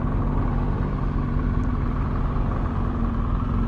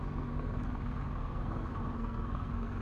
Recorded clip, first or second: first